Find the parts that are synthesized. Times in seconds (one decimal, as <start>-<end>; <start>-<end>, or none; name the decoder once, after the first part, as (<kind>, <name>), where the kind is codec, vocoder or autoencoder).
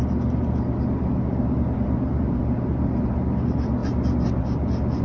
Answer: none